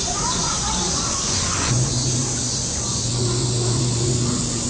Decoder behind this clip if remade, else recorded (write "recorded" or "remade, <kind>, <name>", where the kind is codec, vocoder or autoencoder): remade, vocoder, Vocos